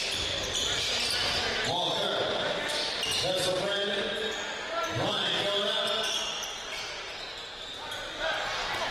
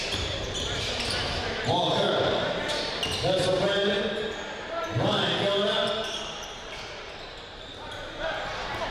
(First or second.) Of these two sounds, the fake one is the second